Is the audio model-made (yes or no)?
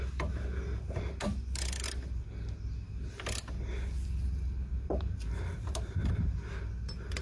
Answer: no